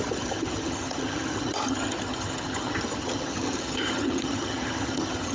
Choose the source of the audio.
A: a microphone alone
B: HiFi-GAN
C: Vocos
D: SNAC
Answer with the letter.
B